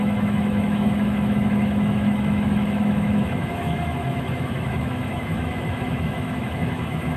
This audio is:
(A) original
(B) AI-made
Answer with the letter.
B